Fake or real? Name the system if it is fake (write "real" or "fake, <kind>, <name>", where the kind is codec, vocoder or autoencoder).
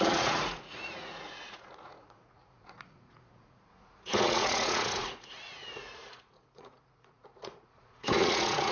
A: fake, vocoder, Vocos